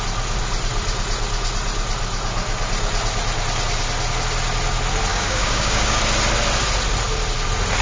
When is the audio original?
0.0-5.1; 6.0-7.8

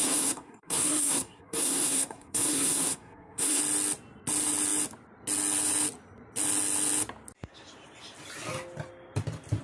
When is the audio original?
3.6-9.6

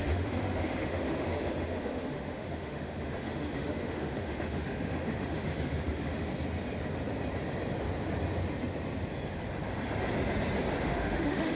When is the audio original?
6.3-10.8

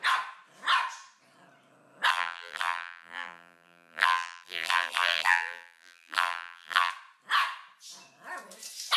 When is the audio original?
0.0-2.1; 6.9-9.0

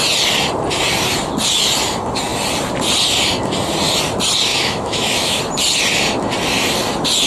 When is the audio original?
0.0-4.5; 5.4-7.3

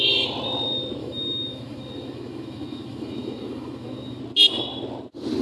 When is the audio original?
0.0-1.0; 4.2-5.4

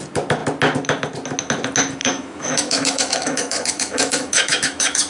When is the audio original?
0.0-2.0